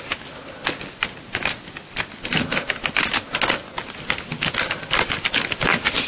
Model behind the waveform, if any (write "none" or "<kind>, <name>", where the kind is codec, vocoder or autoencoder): none